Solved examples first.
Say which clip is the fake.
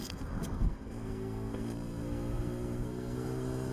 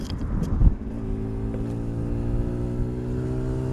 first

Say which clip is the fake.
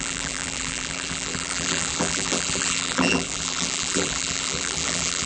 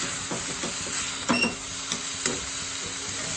first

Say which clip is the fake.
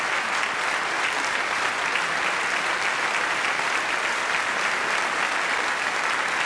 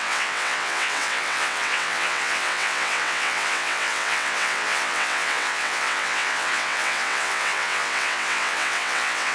second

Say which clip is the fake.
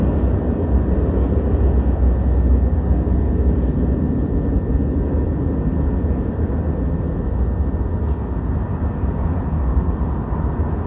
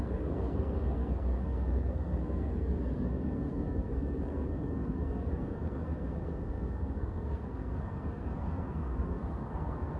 second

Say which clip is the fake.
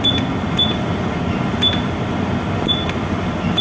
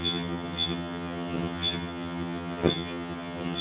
second